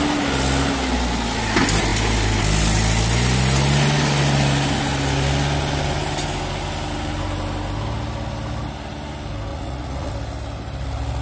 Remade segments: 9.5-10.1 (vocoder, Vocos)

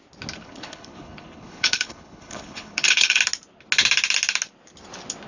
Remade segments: 0.4-3.2 (codec, HILCodec)